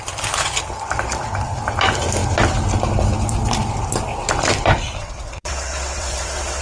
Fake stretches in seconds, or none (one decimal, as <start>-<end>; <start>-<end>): 5.0-6.6